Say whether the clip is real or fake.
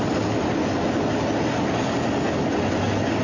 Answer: real